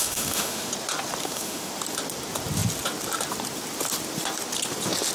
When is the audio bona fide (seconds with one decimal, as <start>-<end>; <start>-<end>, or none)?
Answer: 0.7-1.2; 1.7-5.1